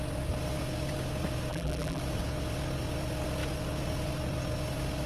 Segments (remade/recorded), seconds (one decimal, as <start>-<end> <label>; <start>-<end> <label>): 0.0-1.5 recorded; 1.5-2.0 remade; 2.0-5.1 recorded